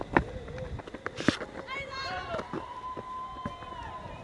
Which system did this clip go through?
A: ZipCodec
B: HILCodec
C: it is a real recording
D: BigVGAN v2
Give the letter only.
C